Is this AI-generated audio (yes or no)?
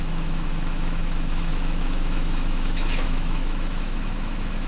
yes